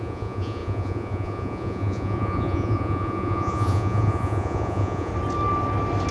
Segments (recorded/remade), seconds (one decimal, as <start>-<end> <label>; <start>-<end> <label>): 0.0-5.1 remade; 5.1-6.1 recorded